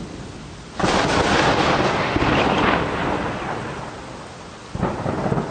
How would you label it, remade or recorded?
recorded